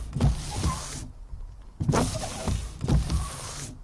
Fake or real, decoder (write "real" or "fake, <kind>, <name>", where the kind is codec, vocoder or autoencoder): real